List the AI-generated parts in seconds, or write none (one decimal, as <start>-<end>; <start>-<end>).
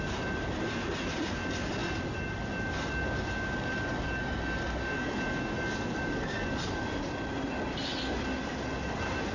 none